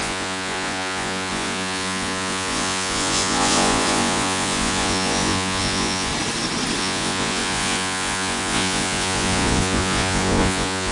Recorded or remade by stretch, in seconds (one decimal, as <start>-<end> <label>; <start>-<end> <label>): 0.0-6.1 remade; 6.1-6.8 recorded; 6.8-10.9 remade

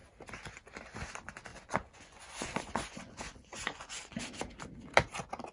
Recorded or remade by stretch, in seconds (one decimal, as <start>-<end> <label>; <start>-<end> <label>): 0.0-1.5 recorded; 1.5-4.2 remade; 4.2-5.5 recorded

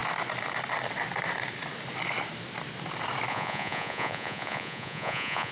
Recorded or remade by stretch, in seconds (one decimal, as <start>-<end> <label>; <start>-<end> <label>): 0.0-3.3 recorded; 3.3-5.5 remade

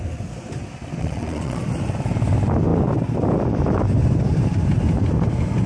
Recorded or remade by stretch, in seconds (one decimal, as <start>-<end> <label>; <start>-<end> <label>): 0.0-1.0 recorded; 1.0-1.6 remade; 1.6-5.7 recorded

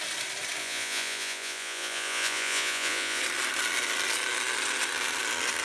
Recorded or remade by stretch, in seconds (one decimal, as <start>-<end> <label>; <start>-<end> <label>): 0.0-0.6 recorded; 0.6-3.2 remade; 3.2-5.6 recorded

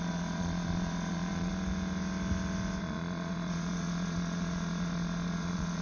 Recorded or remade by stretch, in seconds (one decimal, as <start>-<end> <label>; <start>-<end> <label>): 0.0-1.5 remade; 1.5-2.8 recorded; 2.8-5.8 remade

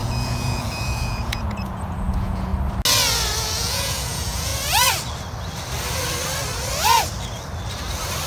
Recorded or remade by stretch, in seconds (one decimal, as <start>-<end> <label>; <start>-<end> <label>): 0.0-2.5 remade; 2.5-3.4 recorded; 3.4-4.5 remade; 4.5-8.3 recorded

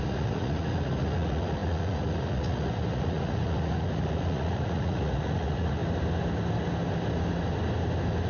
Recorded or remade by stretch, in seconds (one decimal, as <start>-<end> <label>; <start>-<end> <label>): 0.0-5.8 remade; 5.8-8.3 recorded